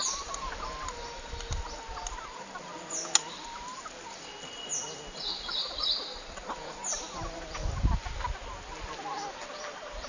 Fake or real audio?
real